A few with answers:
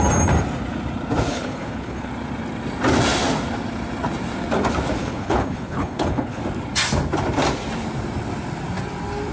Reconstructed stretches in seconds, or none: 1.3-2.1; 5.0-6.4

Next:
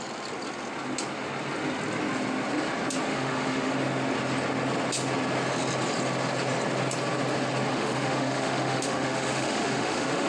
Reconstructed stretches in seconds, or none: 3.1-3.7; 7.7-10.3

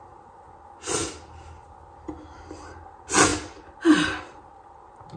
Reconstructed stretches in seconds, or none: none

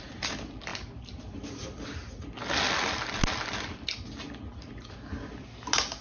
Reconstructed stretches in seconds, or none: none

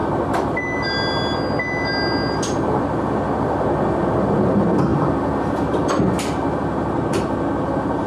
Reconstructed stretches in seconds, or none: none